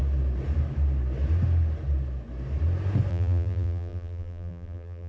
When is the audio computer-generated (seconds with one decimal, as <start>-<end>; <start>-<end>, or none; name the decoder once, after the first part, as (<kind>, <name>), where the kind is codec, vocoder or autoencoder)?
3.1-5.1 (vocoder, BigVGAN v2)